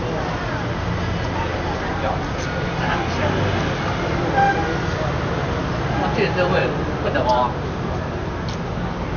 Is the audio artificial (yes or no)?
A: no